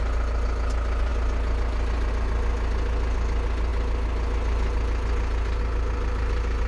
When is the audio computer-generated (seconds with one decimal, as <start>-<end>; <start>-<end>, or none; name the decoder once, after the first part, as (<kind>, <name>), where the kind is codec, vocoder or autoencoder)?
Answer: none